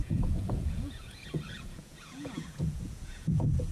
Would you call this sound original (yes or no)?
no